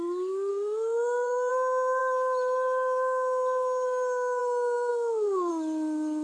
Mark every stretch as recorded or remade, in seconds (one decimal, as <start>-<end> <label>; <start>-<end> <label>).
0.0-0.5 recorded; 0.5-1.5 remade; 1.5-4.9 recorded; 4.9-5.5 remade; 5.5-6.2 recorded